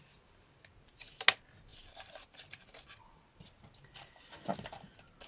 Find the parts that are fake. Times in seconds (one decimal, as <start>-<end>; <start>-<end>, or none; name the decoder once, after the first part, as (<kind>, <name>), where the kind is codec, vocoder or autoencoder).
none